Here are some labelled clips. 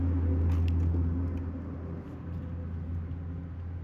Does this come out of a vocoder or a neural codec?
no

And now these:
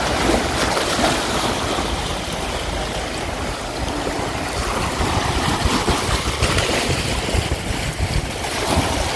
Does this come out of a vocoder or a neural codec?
no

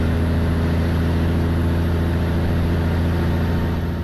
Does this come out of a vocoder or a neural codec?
no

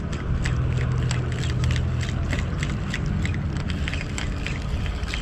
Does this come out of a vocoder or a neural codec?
no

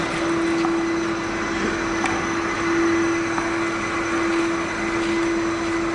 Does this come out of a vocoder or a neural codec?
no